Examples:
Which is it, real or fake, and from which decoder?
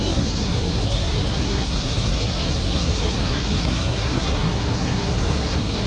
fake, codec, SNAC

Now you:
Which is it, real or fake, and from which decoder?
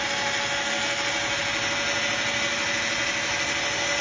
real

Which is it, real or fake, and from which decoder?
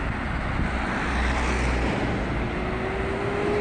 real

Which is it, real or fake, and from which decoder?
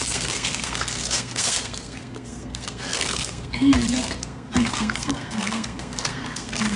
fake, codec, SNAC